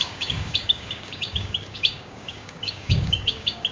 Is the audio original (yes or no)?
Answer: no